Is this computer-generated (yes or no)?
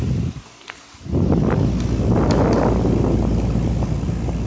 no